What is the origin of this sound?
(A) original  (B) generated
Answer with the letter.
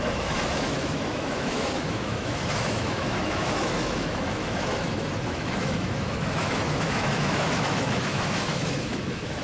B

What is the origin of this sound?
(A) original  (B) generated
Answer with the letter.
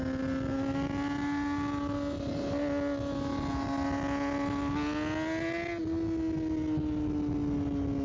A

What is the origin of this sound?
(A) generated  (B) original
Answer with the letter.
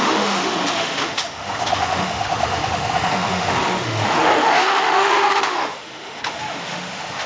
A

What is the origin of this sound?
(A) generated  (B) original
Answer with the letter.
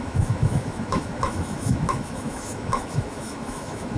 A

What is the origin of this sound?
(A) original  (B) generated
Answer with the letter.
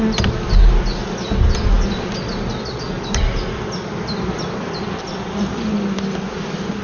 A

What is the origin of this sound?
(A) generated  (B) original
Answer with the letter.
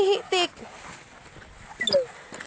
B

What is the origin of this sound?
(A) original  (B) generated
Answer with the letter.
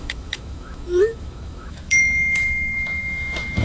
B